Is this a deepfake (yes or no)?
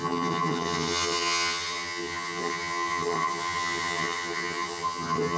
yes